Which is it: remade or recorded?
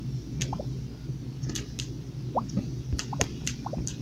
recorded